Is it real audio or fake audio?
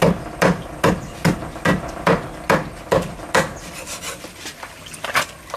real